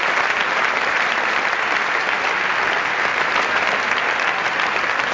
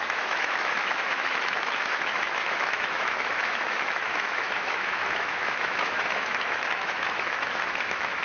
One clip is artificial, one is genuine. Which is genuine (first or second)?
first